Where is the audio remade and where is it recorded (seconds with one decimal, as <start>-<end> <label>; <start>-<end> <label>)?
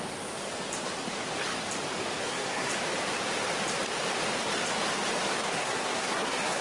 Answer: 0.0-2.2 recorded; 2.2-2.7 remade; 2.7-5.4 recorded; 5.4-6.6 remade